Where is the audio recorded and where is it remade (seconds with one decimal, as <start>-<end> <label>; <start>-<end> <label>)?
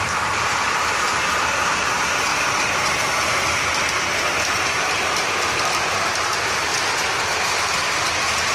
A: 0.0-2.3 remade; 2.3-4.5 recorded; 4.5-4.9 remade; 4.9-5.5 recorded; 5.5-6.7 remade; 6.7-7.2 recorded; 7.2-8.5 remade